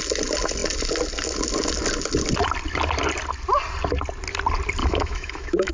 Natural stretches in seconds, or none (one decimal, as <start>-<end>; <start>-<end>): 0.0-4.8